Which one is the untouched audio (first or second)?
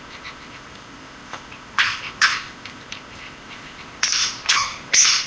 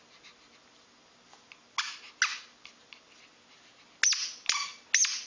second